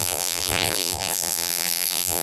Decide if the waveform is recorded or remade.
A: remade